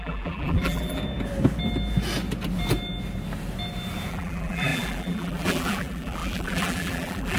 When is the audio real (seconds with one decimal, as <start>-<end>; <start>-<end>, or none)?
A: 1.0-4.1